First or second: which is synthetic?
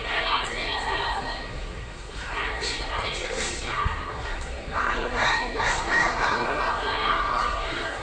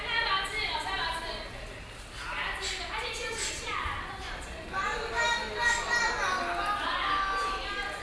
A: first